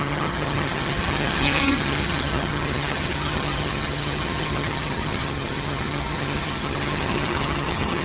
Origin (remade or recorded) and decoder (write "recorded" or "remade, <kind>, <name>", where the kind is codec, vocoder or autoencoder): remade, vocoder, HiFi-GAN